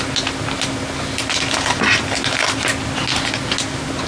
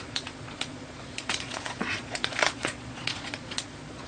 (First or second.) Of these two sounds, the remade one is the second